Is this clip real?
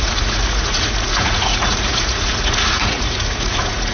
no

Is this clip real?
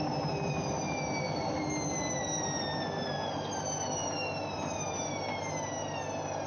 yes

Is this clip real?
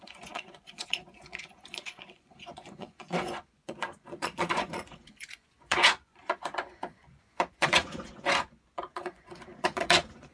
no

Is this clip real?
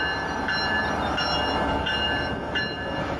yes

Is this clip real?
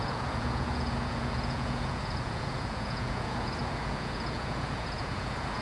no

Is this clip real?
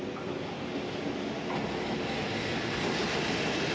yes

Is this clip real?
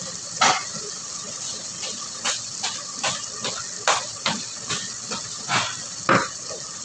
yes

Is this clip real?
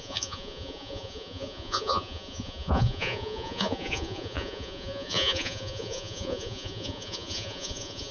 no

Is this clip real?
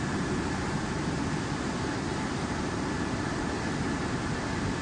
yes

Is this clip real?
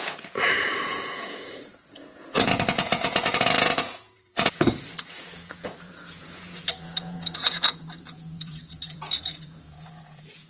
no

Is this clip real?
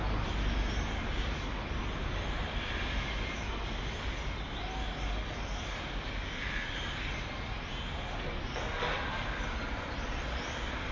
yes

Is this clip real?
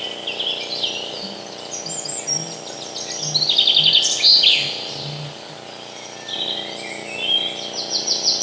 yes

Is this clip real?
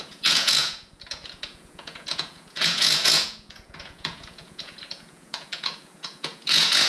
no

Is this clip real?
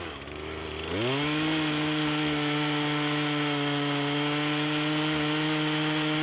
yes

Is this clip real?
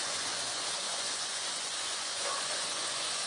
no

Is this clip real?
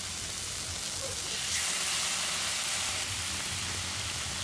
yes